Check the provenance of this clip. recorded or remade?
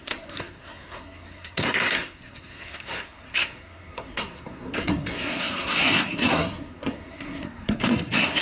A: remade